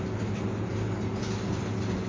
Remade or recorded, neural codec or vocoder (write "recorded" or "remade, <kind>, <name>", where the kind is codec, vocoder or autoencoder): recorded